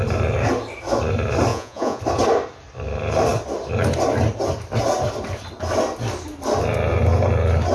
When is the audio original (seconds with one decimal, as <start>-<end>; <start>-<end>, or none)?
0.0-1.5; 2.0-7.7

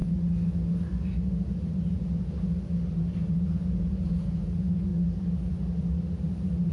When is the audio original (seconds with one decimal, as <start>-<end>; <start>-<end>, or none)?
0.0-3.3; 4.9-6.7

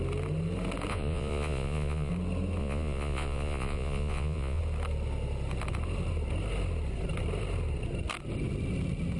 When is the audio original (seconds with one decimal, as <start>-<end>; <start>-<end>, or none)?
0.0-0.9; 2.1-2.6; 4.6-9.2